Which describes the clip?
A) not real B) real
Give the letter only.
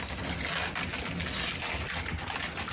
B